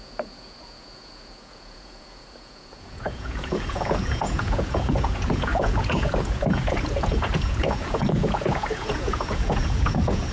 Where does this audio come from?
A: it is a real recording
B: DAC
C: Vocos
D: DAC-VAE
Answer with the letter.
C